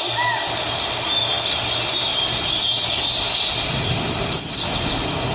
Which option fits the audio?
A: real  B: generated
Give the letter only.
A